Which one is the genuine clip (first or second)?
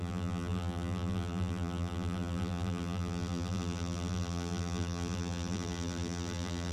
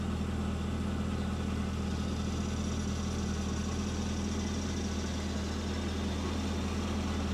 second